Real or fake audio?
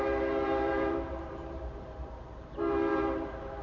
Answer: fake